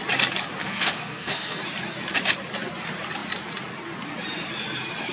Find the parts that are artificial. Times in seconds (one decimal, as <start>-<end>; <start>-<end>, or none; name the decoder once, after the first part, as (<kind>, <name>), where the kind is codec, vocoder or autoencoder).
0.6-1.6 (codec, SNAC)